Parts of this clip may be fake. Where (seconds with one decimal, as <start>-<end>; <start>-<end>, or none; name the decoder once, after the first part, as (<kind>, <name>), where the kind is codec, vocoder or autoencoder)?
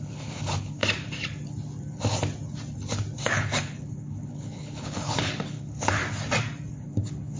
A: 0.0-0.8 (codec, HILCodec); 3.2-6.0; 6.7-7.4